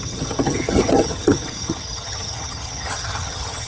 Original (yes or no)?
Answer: no